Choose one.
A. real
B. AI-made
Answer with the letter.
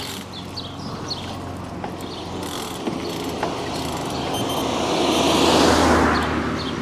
A